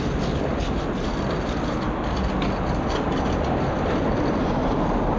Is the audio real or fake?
real